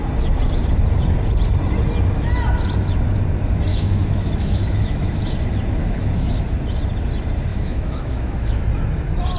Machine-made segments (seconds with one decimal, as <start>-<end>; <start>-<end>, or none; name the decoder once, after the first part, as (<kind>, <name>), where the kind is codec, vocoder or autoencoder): 3.7-5.2 (autoencoder, DAC-VAE); 5.8-6.4; 7.5-8.6

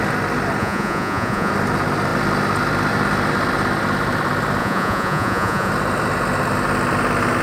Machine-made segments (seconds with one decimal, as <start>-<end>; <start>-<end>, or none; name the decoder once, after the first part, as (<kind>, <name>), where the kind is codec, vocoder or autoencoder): 0.6-1.5 (vocoder, Vocos); 4.6-5.7

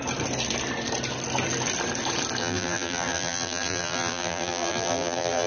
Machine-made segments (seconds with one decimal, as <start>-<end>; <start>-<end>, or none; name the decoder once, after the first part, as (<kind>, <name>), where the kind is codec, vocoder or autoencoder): 2.4-5.5 (vocoder, BigVGAN v2)

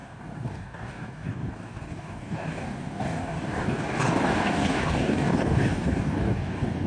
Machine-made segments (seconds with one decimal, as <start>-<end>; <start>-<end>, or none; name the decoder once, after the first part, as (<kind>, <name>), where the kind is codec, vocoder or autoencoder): 0.0-6.9 (codec, DAC)

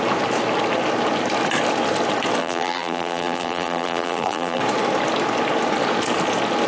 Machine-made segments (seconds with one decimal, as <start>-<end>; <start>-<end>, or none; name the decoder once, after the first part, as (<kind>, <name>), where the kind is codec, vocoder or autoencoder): 2.4-4.6 (vocoder, BigVGAN v2)

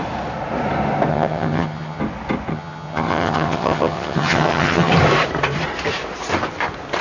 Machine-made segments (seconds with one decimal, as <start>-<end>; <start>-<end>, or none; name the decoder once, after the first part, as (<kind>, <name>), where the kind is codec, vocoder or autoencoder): 1.1-2.0 (vocoder, HiFi-GAN); 2.5-4.9

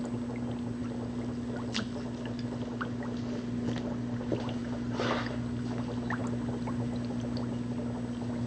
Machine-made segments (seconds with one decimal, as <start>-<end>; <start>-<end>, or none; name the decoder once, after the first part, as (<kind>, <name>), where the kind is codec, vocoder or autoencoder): none